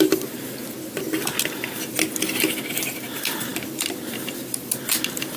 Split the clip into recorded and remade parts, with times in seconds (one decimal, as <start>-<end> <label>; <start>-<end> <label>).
0.0-5.4 recorded